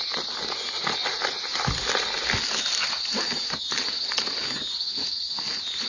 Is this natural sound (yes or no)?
yes